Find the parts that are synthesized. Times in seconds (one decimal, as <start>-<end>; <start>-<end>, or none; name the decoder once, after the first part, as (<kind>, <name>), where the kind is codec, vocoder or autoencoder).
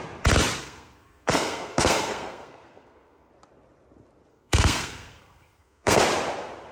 0.6-3.3 (codec, SNAC); 4.3-6.0